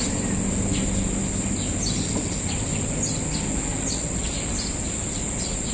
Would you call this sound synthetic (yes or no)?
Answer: no